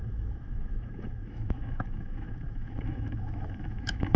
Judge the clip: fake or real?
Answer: fake